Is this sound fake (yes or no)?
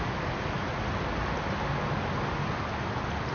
no